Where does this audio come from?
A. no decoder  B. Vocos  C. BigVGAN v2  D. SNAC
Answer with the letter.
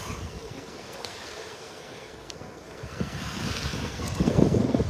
D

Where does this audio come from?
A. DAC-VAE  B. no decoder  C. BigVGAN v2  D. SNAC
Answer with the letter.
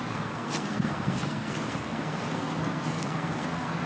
D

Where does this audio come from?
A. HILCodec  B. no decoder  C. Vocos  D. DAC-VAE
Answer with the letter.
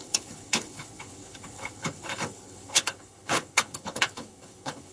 A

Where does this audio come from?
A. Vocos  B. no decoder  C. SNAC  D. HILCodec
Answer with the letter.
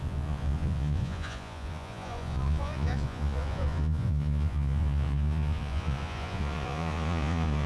A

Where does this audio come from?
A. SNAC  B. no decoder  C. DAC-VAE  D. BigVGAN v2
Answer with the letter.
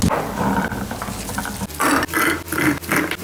B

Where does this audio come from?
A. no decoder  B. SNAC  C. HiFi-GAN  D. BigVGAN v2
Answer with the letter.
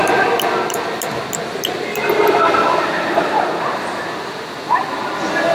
A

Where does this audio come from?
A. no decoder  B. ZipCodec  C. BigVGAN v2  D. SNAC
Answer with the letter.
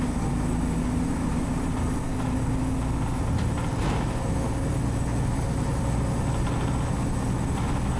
A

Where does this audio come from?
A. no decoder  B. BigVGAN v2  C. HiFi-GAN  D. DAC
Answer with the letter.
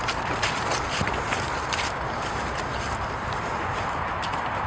A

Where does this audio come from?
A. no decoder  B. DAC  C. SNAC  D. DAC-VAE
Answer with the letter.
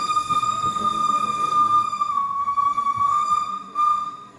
C